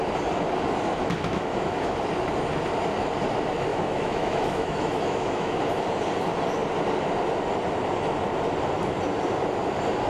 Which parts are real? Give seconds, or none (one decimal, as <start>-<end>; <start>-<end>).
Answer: 0.0-1.0; 1.9-3.7; 5.6-10.1

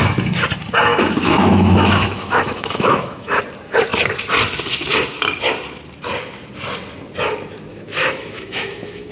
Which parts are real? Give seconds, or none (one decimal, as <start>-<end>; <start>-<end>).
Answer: 0.0-0.9; 3.4-7.7

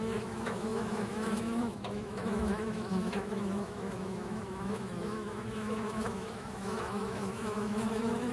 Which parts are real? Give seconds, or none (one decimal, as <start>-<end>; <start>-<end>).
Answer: none